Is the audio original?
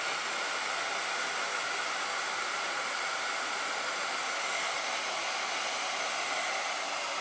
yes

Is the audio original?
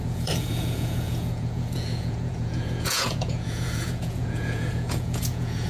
no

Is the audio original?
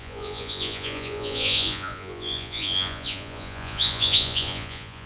no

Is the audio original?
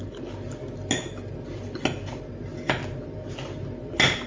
yes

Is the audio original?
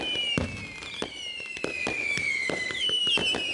no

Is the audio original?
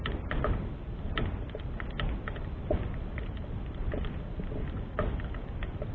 yes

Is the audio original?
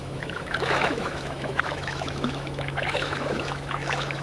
no